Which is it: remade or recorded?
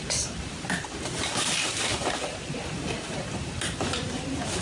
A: remade